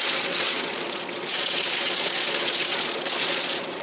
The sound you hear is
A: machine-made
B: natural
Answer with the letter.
A